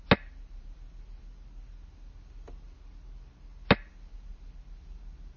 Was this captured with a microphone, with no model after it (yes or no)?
yes